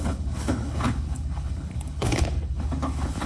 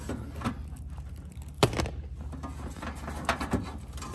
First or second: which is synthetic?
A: first